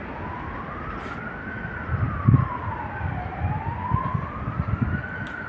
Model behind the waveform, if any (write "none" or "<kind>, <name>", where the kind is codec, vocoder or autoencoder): none